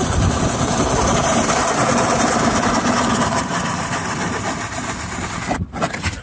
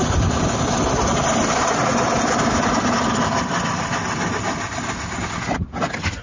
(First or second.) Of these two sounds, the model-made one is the first